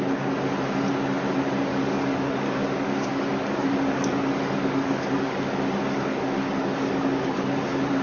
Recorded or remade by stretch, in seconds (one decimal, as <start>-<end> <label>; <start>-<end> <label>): 0.0-1.7 recorded; 1.7-5.6 remade; 5.6-6.1 recorded; 6.1-7.6 remade; 7.6-8.0 recorded